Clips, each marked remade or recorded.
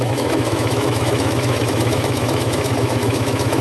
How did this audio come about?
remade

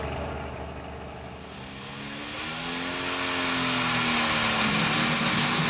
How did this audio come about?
recorded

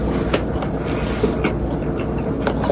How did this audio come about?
recorded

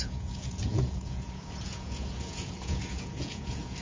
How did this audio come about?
remade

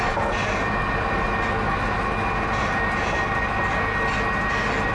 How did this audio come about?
recorded